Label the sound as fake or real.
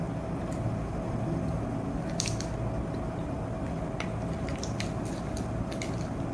real